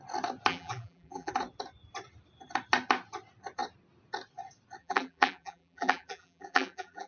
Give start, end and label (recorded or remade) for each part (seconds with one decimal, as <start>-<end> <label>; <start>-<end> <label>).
0.0-0.5 recorded; 0.5-1.3 remade; 1.3-4.8 recorded; 4.8-7.1 remade